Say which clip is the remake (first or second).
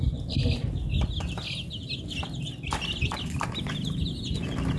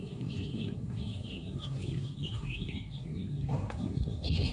second